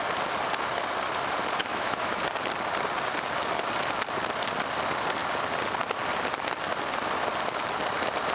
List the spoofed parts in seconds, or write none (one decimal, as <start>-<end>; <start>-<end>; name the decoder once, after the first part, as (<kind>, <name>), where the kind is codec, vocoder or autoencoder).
1.6-2.2 (autoencoder, DAC-VAE)